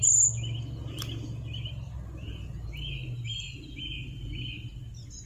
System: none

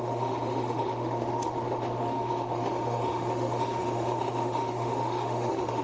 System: autoencoder, DAC-VAE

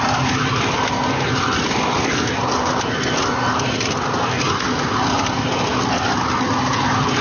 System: none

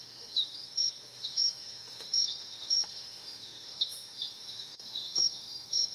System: autoencoder, DAC-VAE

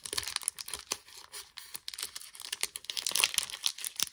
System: none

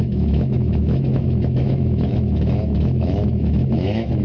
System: autoencoder, DAC-VAE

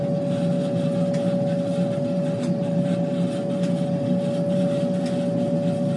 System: none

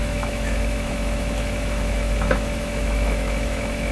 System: autoencoder, DAC-VAE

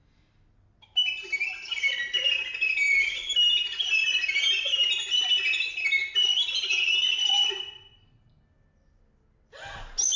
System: none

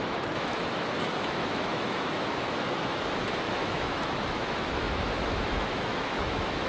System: autoencoder, DAC-VAE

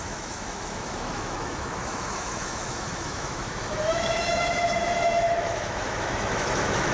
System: autoencoder, DAC-VAE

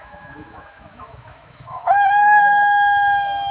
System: autoencoder, DAC-VAE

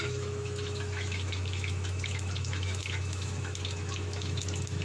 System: autoencoder, DAC-VAE